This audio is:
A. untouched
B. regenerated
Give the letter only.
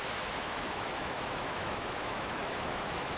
B